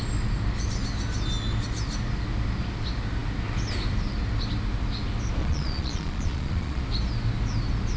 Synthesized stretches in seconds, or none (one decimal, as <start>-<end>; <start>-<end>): 5.4-6.8